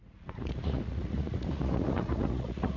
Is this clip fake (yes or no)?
yes